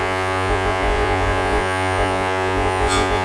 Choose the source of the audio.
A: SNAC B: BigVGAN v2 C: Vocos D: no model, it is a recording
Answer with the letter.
C